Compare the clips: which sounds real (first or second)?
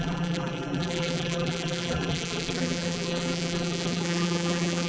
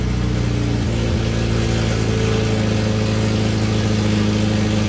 second